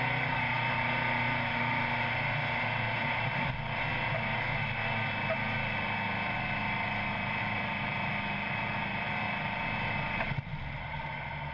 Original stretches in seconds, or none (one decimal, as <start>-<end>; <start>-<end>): 0.0-11.5